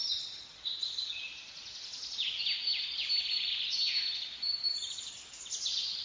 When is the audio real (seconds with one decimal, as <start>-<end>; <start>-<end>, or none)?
0.0-6.0